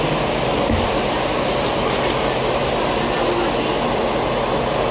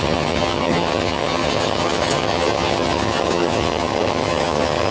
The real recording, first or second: first